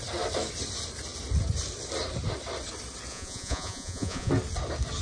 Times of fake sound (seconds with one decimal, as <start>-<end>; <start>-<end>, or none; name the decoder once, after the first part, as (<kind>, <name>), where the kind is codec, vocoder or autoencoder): 3.1-4.3 (vocoder, Vocos)